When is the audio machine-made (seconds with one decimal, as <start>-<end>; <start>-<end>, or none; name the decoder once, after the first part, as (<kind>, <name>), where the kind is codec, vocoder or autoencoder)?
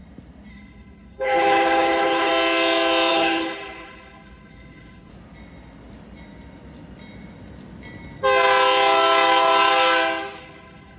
0.5-2.3 (codec, HILCodec); 3.1-5.1; 10.4-11.0